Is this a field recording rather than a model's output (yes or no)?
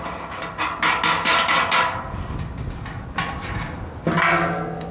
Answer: yes